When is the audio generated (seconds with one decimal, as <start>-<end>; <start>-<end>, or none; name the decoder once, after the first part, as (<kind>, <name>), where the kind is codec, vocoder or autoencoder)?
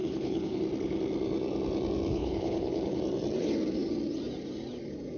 0.0-0.6 (codec, HILCodec); 2.1-3.0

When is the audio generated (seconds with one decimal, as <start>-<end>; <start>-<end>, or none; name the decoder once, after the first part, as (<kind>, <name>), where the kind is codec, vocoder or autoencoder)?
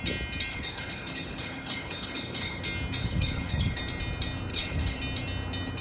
0.5-2.6 (codec, HILCodec); 3.0-3.8; 4.5-5.0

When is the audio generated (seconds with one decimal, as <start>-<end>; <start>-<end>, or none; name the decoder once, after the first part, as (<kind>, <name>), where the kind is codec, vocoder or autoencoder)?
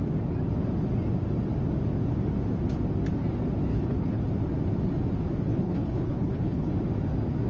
3.7-4.2 (codec, HILCodec); 5.5-6.7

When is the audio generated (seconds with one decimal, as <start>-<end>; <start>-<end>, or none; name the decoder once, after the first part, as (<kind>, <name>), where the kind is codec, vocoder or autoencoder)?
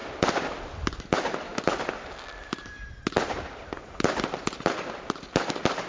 none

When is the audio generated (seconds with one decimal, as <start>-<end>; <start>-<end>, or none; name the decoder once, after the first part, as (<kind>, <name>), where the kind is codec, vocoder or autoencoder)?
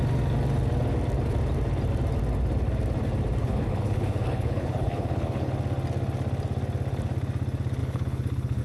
3.4-5.5 (codec, HILCodec); 7.8-8.6